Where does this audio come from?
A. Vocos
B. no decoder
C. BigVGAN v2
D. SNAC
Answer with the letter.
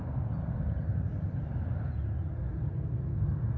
B